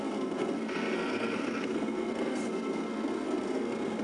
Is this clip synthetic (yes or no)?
yes